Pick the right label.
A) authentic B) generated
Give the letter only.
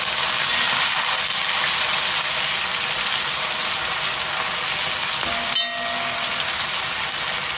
A